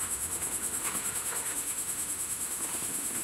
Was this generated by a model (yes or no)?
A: yes